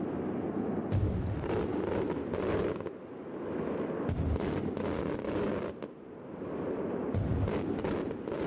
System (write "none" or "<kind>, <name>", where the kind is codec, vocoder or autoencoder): none